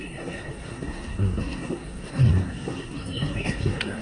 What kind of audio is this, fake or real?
fake